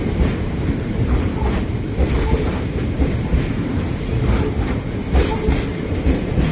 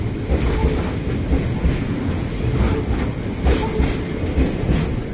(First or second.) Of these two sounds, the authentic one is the second